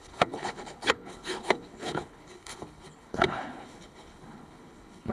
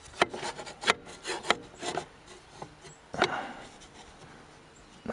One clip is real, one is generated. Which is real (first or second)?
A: second